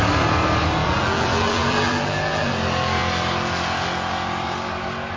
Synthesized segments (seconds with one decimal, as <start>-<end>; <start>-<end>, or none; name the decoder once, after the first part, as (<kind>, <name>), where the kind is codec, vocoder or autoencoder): 0.8-2.5 (vocoder, BigVGAN v2)